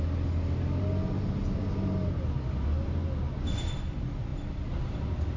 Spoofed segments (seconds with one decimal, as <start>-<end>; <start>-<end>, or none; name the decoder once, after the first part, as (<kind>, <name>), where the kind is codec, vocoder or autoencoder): none